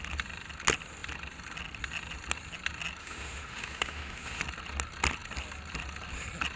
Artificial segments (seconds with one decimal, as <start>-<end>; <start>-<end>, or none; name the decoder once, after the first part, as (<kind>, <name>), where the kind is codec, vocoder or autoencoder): 3.0-4.4 (autoencoder, DAC-VAE)